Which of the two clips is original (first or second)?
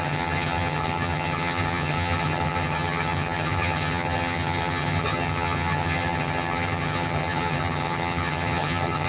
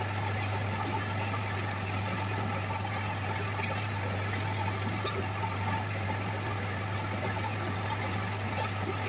second